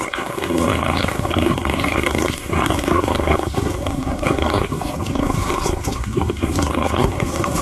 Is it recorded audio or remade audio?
remade